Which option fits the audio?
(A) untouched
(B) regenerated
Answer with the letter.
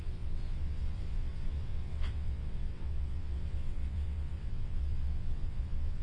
B